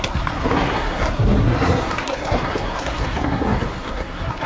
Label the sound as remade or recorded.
remade